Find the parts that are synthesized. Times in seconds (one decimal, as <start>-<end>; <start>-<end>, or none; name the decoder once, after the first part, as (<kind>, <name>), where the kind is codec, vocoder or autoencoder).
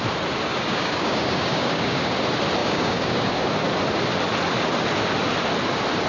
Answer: 0.5-2.1 (codec, DAC); 2.6-3.4